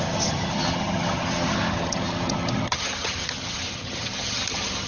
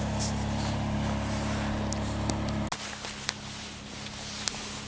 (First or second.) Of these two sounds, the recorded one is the second